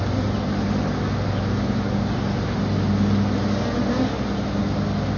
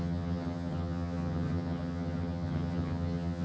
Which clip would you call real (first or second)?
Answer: first